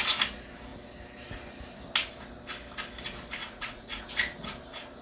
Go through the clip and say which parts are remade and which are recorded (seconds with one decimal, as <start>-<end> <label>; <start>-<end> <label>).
0.0-3.4 recorded; 3.4-4.1 remade; 4.1-5.0 recorded